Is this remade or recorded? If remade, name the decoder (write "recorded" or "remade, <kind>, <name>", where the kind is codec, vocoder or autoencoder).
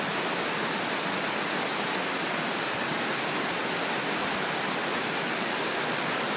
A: recorded